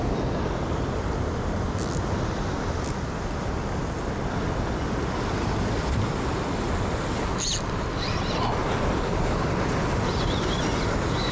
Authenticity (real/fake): real